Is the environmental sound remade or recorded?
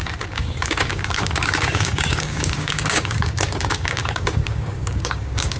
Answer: remade